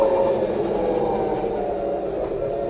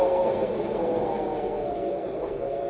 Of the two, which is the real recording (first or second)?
first